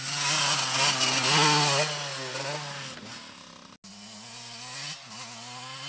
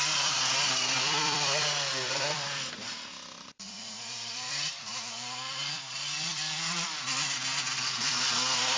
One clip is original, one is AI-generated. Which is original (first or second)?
first